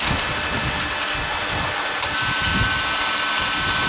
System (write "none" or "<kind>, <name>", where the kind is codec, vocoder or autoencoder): none